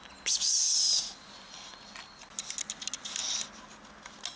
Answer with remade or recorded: recorded